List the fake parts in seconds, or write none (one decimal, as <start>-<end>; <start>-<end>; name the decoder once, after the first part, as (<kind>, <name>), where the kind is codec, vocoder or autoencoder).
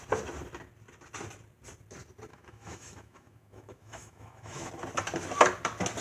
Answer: 2.3-4.7 (autoencoder, DAC-VAE)